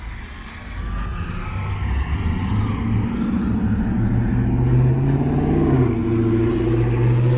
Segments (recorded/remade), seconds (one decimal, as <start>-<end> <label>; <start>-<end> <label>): 0.0-7.4 recorded